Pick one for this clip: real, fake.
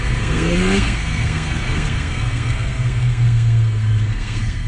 fake